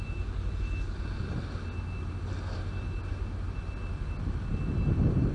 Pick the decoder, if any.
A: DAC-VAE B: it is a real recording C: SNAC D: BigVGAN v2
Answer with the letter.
B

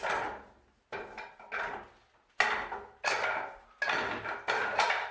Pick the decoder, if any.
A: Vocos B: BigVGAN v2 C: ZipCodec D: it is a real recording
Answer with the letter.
D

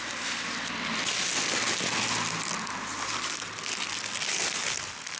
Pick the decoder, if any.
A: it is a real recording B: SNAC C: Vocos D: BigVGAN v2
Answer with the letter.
A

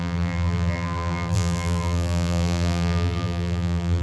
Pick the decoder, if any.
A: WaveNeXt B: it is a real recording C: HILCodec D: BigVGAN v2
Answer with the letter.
D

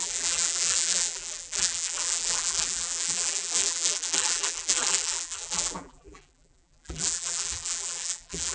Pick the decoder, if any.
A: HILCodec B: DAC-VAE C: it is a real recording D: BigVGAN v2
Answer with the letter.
D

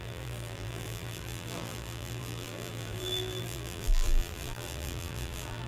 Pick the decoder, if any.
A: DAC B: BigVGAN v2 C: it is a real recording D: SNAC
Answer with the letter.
B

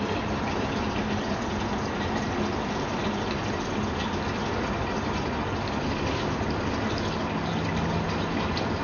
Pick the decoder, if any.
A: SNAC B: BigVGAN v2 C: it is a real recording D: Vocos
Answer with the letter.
C